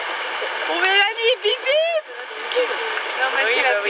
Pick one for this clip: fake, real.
real